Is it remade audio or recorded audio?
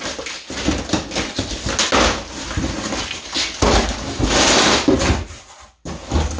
recorded